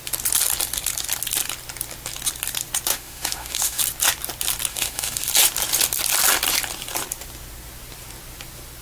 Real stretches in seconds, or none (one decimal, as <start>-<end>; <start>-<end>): 0.0-2.9; 3.8-4.7; 5.3-8.8